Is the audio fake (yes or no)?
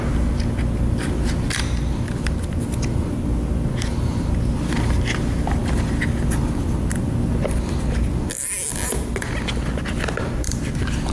no